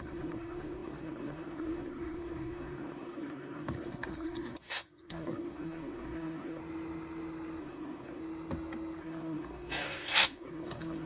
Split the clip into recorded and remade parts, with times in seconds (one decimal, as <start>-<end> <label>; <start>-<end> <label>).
0.0-6.6 remade; 6.6-7.6 recorded; 7.6-8.2 remade; 8.2-9.0 recorded; 9.0-11.1 remade